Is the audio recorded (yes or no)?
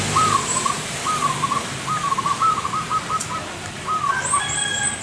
no